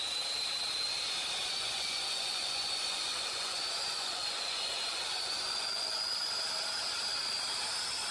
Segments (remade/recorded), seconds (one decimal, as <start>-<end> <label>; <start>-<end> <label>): 0.0-1.4 recorded; 1.4-6.3 remade; 6.3-8.1 recorded